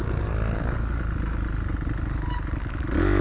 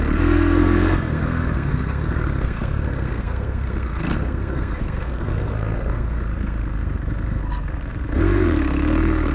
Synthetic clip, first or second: second